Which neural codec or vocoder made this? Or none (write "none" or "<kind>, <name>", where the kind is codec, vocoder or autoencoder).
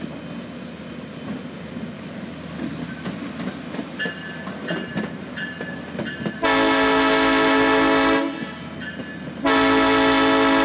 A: none